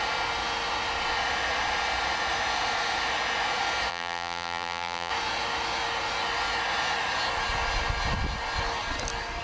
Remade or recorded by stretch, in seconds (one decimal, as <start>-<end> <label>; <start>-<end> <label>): 0.0-3.9 recorded; 3.9-5.1 remade; 5.1-9.4 recorded